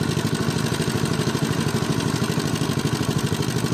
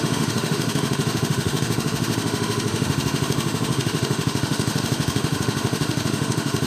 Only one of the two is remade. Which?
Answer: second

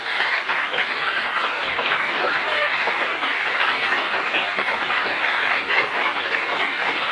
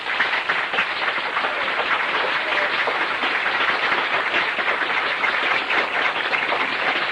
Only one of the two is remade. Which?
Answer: first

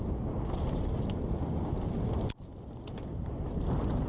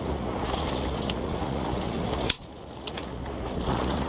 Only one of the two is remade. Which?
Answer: second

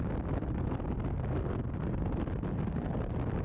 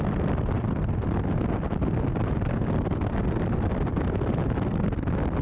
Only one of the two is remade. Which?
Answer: second